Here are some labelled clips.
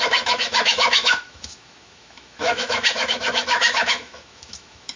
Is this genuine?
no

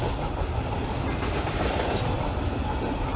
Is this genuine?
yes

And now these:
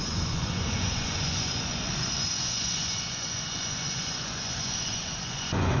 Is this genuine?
no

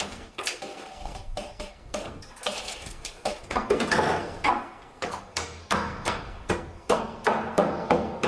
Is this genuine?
no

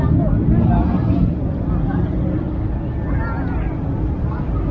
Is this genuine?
yes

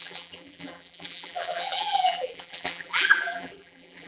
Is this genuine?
no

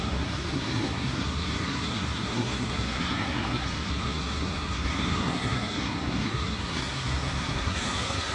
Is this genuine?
no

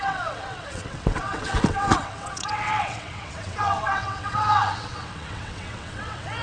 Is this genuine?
no